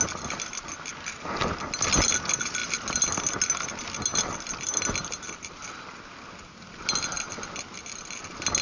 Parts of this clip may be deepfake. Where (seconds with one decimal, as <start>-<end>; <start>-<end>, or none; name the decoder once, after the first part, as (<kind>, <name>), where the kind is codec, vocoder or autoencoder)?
none

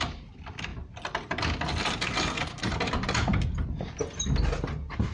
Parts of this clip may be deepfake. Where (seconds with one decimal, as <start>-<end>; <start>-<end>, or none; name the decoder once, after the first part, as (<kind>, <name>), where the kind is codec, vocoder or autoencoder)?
0.0-0.7 (vocoder, BigVGAN v2); 2.6-3.3; 4.4-5.1

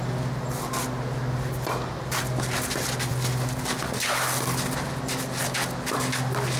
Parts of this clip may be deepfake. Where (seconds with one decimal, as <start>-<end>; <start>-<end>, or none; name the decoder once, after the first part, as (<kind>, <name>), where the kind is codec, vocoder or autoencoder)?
none

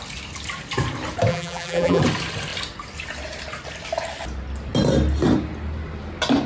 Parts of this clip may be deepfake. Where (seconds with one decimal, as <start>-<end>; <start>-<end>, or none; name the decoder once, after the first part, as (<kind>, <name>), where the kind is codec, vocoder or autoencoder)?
1.3-2.0 (vocoder, BigVGAN v2)

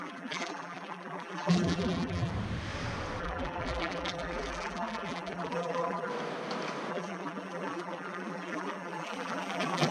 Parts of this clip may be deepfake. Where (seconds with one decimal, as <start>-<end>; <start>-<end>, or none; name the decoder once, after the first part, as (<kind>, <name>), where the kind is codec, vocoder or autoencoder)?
0.0-2.3 (vocoder, BigVGAN v2); 3.2-6.1; 6.9-9.9

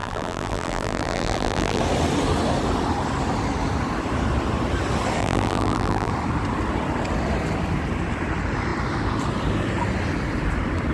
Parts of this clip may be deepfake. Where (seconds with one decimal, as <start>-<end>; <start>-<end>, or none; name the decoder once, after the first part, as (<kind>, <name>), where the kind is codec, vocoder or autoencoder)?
0.0-1.8 (vocoder, BigVGAN v2); 5.2-6.1

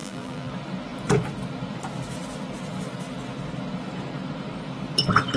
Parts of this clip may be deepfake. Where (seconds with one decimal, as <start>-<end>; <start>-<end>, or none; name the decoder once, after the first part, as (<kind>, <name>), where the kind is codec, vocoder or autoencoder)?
0.0-0.5 (vocoder, BigVGAN v2)

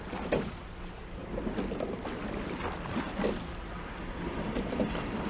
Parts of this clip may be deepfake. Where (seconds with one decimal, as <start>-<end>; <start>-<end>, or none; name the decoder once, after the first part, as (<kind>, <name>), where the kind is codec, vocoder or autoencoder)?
none